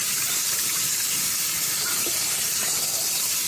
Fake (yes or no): yes